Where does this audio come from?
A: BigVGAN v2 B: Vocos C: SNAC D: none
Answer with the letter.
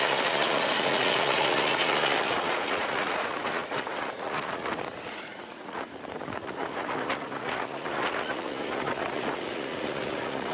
B